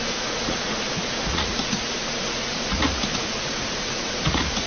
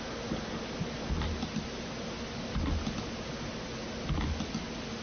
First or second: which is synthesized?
first